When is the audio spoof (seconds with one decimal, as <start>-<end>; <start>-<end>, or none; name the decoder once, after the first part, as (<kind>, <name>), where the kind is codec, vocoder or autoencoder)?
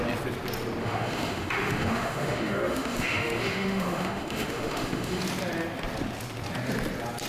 0.8-5.2 (autoencoder, DAC-VAE)